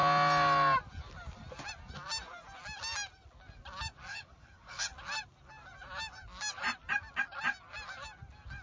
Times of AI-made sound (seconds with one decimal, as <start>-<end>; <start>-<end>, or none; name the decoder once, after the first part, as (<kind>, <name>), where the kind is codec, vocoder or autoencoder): 4.1-4.9 (codec, HILCodec)